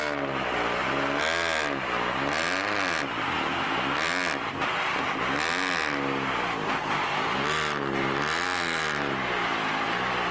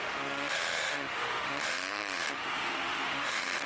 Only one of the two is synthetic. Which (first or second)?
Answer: second